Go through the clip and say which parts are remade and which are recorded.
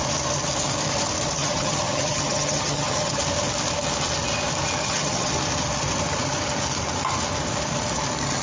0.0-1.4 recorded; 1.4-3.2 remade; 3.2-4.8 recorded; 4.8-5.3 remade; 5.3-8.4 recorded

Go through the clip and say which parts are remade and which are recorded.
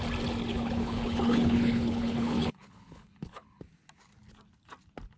0.0-0.5 recorded; 0.5-3.6 remade; 3.6-5.2 recorded